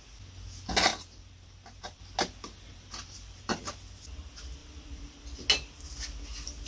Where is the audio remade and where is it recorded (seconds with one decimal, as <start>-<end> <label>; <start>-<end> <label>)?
0.0-0.9 recorded; 0.9-2.0 remade; 2.0-2.7 recorded; 2.7-3.7 remade; 3.7-4.6 recorded; 4.6-5.2 remade; 5.2-6.7 recorded